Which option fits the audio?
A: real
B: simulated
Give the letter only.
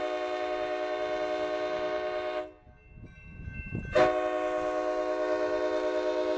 A